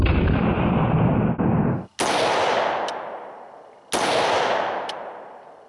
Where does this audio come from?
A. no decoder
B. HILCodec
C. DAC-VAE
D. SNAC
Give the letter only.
A